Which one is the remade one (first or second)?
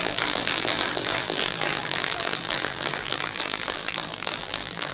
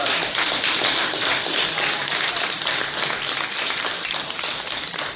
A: first